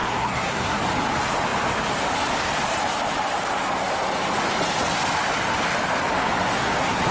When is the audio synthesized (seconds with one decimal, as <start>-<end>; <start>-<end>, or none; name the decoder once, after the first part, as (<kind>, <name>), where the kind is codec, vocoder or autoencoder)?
0.0-0.8 (codec, SNAC); 6.5-7.1